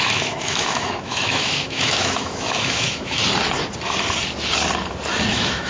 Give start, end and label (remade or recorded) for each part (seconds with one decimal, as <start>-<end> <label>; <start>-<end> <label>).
0.0-3.2 remade; 3.2-5.3 recorded; 5.3-5.7 remade